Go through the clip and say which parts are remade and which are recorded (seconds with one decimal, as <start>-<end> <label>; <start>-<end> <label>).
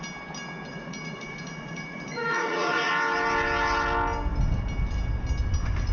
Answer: 0.0-0.7 recorded; 0.7-2.9 remade; 2.9-5.9 recorded